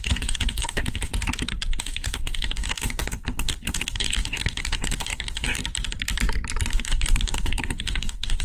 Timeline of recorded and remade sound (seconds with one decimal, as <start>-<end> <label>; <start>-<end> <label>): 0.0-1.1 remade; 1.1-1.8 recorded; 1.8-5.6 remade; 5.6-6.7 recorded; 6.7-8.4 remade

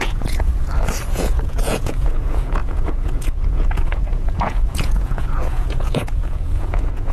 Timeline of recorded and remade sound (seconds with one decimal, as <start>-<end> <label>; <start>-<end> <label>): 0.0-0.5 remade; 0.5-1.1 recorded; 1.1-7.1 remade